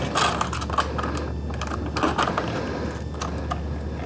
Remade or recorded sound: recorded